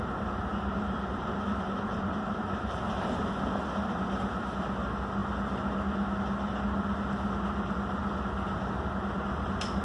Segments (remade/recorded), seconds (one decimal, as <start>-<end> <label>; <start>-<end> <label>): 0.0-0.5 recorded; 0.5-3.2 remade; 3.2-9.8 recorded

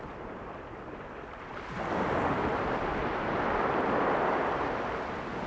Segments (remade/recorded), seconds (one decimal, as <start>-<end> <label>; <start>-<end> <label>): 0.0-1.5 recorded; 1.5-2.8 remade; 2.8-5.5 recorded

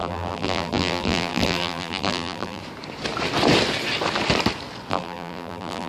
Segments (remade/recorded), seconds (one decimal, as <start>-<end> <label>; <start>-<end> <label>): 0.0-2.6 remade; 2.6-4.9 recorded; 4.9-5.9 remade

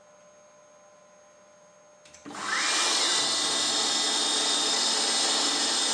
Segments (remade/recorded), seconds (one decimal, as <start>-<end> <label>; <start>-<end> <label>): 0.0-5.9 recorded

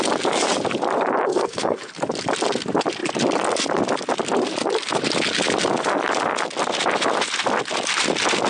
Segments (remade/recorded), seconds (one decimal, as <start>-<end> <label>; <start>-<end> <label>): 0.0-1.3 recorded; 1.3-1.9 remade; 1.9-8.5 recorded